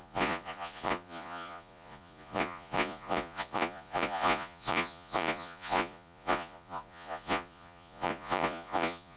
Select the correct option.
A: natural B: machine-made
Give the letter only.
B